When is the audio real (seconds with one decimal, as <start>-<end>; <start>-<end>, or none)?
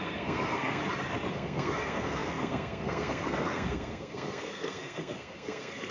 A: 0.8-1.3